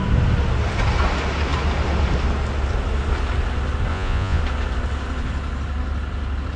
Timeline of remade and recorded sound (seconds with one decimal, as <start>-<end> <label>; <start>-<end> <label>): 0.0-3.9 recorded; 3.9-4.4 remade; 4.4-6.6 recorded

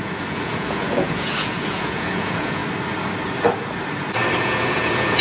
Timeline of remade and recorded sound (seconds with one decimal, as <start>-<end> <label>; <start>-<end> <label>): 0.0-2.6 remade; 2.6-4.4 recorded; 4.4-5.2 remade